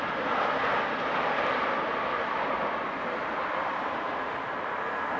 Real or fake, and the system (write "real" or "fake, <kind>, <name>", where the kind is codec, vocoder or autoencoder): real